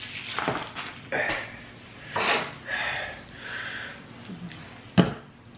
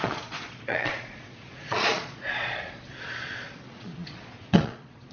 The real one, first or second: first